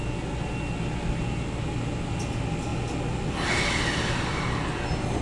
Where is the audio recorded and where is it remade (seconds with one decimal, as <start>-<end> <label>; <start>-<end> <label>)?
0.0-5.2 recorded